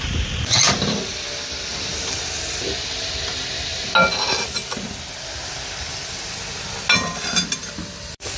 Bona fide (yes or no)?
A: yes